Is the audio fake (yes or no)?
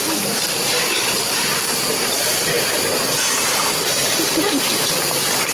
no